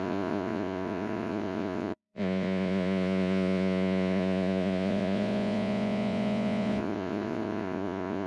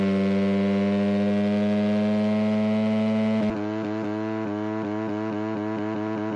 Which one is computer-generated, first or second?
first